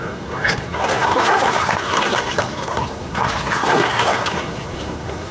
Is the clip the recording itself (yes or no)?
no